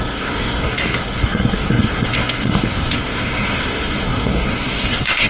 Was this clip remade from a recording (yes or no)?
yes